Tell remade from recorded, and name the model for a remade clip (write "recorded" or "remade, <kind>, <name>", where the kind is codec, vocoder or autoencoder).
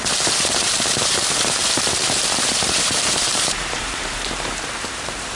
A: remade, vocoder, BigVGAN v2